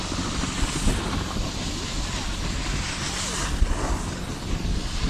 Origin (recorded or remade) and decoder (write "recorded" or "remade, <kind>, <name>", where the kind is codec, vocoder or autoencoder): recorded